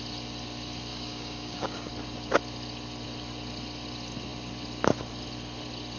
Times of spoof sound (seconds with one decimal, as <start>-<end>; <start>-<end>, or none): 0.9-1.9